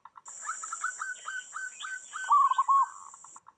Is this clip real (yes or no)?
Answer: yes